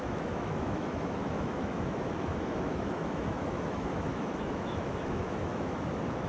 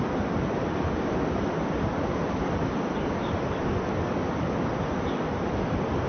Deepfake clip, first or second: first